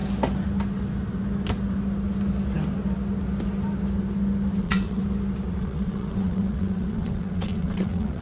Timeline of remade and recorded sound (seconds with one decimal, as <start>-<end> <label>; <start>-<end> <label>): 0.0-4.6 recorded; 4.6-5.0 remade; 5.0-5.6 recorded; 5.6-8.2 remade